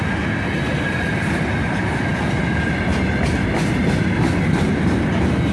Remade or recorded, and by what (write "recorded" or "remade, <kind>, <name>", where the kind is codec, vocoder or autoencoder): recorded